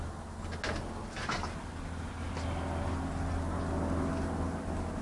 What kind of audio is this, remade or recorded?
recorded